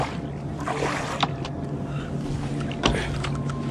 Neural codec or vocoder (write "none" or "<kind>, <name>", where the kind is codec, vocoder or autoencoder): none